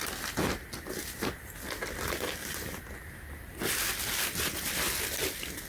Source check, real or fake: real